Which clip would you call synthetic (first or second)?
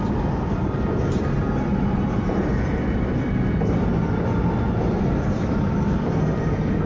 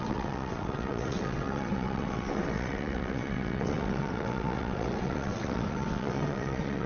second